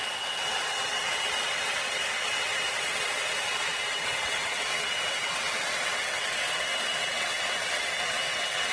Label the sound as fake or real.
fake